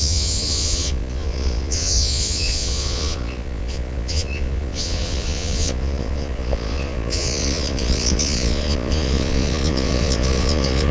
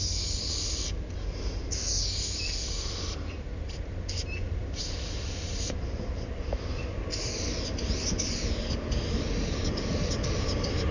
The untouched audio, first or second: second